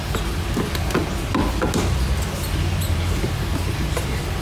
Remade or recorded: recorded